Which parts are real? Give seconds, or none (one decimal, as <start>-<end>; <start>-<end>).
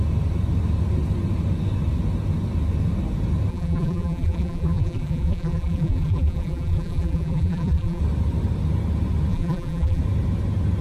0.0-3.5; 8.0-9.3; 10.0-10.8